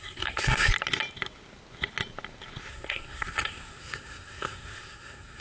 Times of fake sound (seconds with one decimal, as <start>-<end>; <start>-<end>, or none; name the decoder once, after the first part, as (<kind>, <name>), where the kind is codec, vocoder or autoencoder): 0.0-0.7 (codec, SNAC); 2.7-5.4